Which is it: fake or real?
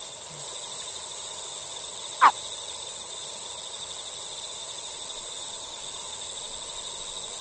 real